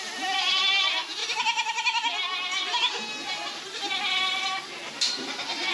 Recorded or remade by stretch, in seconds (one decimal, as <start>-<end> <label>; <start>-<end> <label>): 0.0-5.7 recorded